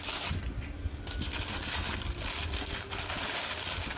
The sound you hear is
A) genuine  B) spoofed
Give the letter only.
A